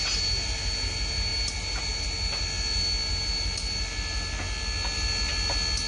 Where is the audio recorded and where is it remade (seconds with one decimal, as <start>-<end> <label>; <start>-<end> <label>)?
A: 0.0-5.9 recorded